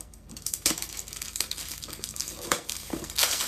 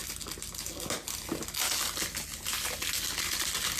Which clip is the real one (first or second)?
second